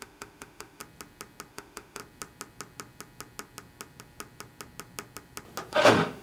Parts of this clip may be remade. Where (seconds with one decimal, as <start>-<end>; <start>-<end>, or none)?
0.0-0.8; 1.5-2.0; 5.7-6.2